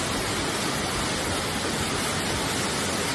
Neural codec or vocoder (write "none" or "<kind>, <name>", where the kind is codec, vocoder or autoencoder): none